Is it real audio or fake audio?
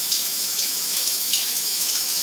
fake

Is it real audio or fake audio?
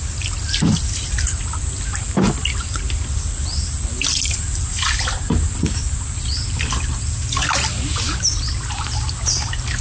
real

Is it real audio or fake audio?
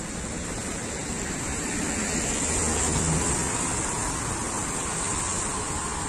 real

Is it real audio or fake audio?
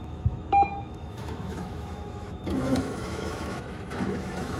fake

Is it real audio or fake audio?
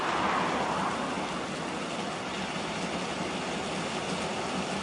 real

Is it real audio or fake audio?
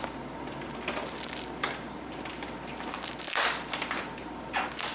real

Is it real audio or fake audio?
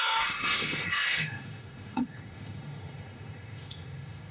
fake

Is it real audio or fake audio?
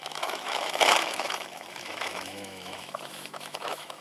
fake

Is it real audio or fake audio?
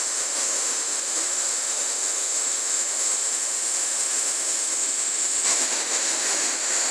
fake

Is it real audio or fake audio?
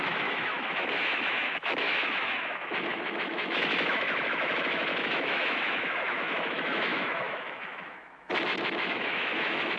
fake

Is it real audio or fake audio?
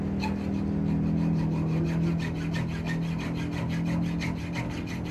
real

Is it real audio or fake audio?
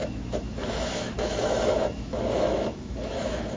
fake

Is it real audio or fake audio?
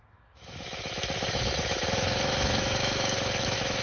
fake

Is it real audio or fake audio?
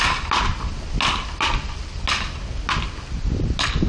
real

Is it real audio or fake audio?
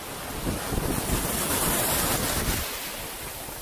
real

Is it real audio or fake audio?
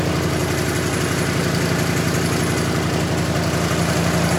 real